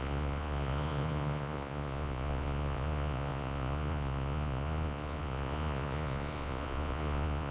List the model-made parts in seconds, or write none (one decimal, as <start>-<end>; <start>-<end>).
0.0-7.5